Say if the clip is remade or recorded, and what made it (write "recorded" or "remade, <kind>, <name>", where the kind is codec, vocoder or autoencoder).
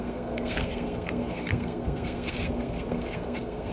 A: remade, codec, SNAC